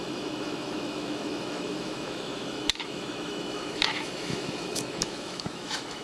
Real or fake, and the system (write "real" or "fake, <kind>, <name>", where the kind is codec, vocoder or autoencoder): fake, autoencoder, DAC-VAE